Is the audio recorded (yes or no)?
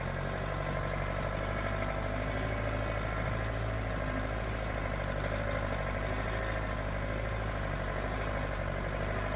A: yes